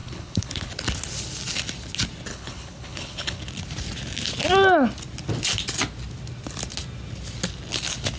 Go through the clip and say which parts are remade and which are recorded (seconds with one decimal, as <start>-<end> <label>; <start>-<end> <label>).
0.0-0.7 remade; 0.7-2.3 recorded; 2.3-3.4 remade; 3.4-8.2 recorded